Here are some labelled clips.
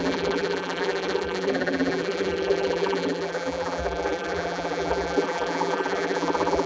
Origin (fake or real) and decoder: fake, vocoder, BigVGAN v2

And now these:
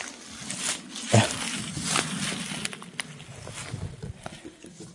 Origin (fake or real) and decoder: real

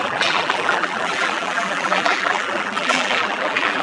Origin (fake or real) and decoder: fake, vocoder, BigVGAN v2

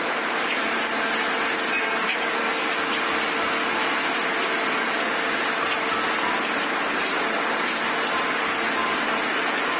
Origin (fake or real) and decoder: real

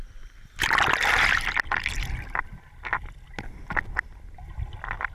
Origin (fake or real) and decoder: real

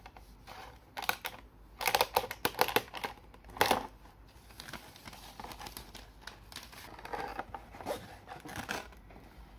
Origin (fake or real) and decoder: real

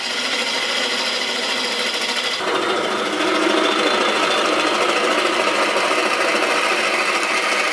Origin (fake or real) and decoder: real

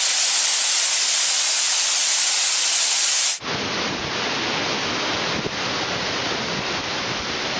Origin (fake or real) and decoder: real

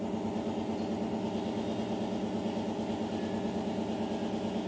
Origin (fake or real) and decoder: real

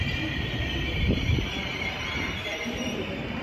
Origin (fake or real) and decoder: fake, vocoder, BigVGAN v2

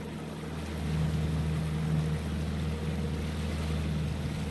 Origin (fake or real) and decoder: real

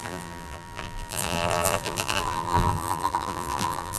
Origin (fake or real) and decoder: fake, vocoder, BigVGAN v2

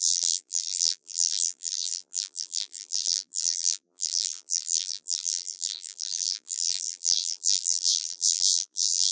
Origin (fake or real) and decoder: fake, vocoder, BigVGAN v2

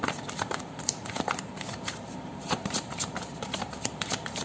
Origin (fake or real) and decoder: fake, vocoder, BigVGAN v2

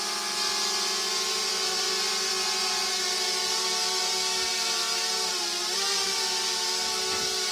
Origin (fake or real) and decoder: real